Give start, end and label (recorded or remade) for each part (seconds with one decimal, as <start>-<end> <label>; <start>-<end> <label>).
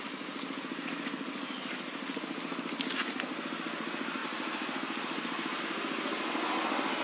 0.0-4.2 recorded; 4.2-5.6 remade; 5.6-7.0 recorded